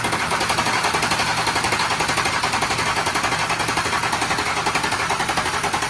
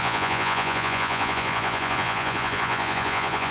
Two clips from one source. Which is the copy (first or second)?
second